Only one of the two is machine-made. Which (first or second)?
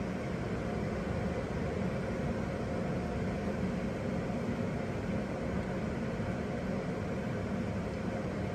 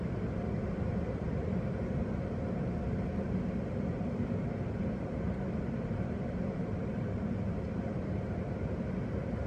second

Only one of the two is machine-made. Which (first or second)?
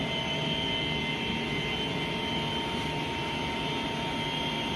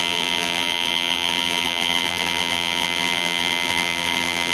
second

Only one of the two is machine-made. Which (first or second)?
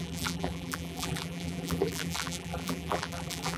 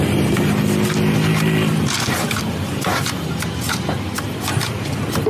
first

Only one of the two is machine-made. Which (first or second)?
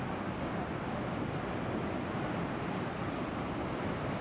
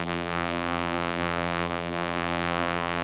second